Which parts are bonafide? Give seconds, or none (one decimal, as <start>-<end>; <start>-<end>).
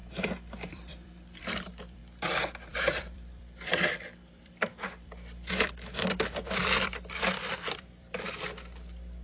0.0-0.7; 2.0-2.7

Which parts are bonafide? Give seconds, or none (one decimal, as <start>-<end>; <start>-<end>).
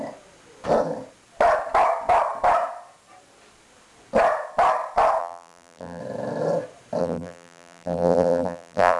0.0-5.2; 6.0-7.0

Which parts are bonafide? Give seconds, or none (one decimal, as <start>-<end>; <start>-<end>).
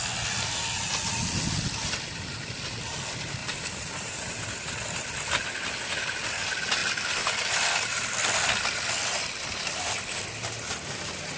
0.0-3.4; 4.7-11.4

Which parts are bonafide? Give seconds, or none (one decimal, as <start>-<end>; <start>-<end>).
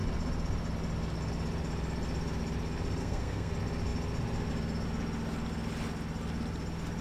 0.0-3.0; 3.5-7.0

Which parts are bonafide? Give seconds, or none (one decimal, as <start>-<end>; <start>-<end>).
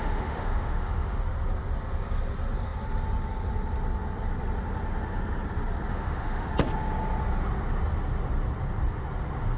1.2-5.9; 6.5-9.6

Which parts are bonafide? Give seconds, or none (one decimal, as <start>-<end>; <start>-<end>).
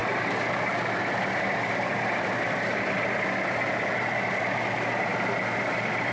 0.0-6.1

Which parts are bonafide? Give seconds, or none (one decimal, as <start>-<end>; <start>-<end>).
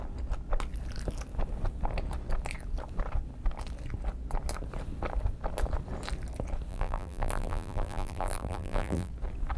0.0-6.7; 9.1-9.6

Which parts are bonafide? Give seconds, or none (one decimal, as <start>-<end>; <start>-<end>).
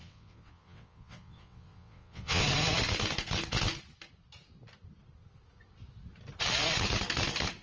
2.4-7.6